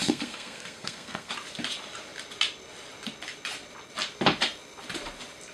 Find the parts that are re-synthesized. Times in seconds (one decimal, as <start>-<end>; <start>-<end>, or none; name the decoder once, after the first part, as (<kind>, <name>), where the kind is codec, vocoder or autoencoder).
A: 0.0-1.3 (codec, SNAC)